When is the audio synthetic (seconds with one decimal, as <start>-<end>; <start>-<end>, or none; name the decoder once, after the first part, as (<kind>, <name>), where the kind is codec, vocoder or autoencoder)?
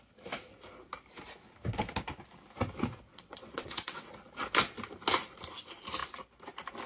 3.1-4.1 (vocoder, WaveNeXt)